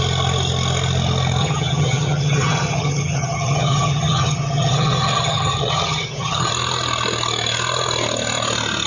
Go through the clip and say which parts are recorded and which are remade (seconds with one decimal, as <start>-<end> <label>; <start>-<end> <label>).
0.0-1.4 recorded; 1.4-6.5 remade; 6.5-8.9 recorded